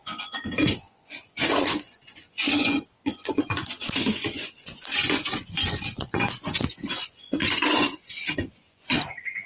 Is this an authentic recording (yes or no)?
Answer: no